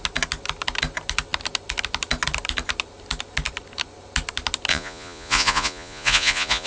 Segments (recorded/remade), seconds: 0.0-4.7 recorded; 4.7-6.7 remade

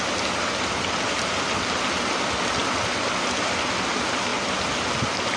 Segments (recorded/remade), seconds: 0.0-5.4 recorded